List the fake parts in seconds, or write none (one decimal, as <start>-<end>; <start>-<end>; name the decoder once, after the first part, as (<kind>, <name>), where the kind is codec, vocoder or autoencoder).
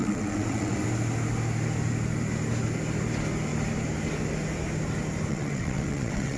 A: 0.0-0.8 (vocoder, WaveNeXt); 5.3-6.4